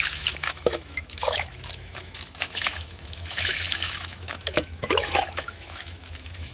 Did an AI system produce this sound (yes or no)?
yes